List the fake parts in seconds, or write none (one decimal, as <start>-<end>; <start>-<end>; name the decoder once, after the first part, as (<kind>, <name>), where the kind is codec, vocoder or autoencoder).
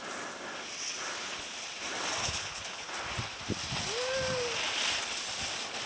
2.2-2.9 (codec, HILCodec)